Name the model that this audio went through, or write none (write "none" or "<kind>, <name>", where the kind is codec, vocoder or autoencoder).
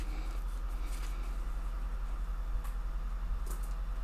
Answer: none